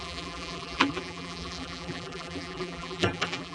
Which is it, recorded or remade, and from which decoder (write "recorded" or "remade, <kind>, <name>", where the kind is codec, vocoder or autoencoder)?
remade, vocoder, BigVGAN v2